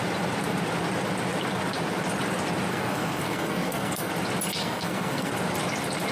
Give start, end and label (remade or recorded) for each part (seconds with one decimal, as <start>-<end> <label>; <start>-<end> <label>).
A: 0.0-2.7 recorded; 2.7-4.1 remade; 4.1-4.6 recorded; 4.6-5.3 remade; 5.3-6.1 recorded